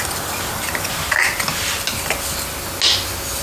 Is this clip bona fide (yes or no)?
yes